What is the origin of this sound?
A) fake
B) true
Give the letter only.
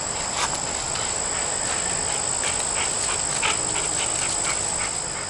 B